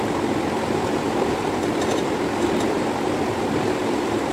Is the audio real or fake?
fake